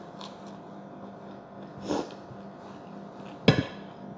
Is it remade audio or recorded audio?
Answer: recorded